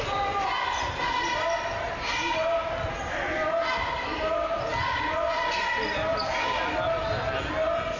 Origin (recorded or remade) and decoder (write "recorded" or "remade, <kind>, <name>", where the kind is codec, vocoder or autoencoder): recorded